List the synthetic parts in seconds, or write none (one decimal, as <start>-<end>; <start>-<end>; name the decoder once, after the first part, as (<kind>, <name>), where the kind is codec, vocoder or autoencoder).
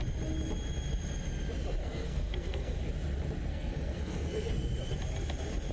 1.8-2.8 (codec, SNAC); 3.5-4.5